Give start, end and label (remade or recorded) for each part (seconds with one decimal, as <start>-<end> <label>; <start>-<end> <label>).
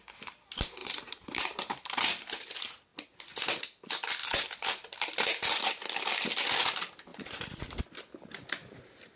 0.0-0.8 recorded; 0.8-2.0 remade; 2.0-4.2 recorded; 4.2-5.7 remade; 5.7-7.1 recorded; 7.1-7.8 remade; 7.8-9.2 recorded